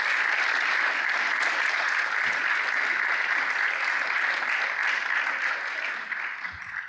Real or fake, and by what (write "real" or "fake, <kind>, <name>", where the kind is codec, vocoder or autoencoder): real